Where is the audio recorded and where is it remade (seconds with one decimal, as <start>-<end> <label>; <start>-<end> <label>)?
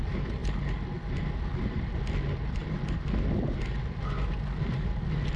0.0-5.4 recorded